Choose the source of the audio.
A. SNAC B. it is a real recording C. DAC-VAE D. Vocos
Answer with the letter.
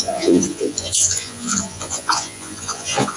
D